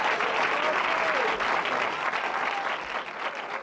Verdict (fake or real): real